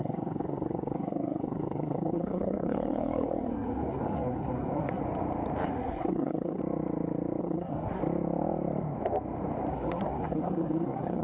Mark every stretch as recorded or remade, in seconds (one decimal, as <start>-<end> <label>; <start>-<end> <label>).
0.0-5.0 remade; 5.0-5.7 recorded; 5.7-6.6 remade; 6.6-7.4 recorded; 7.4-8.0 remade; 8.0-9.7 recorded; 9.7-11.2 remade